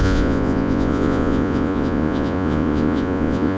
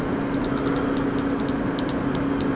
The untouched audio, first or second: second